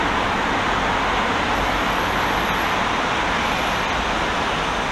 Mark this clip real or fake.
real